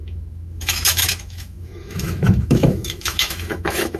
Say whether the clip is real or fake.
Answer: fake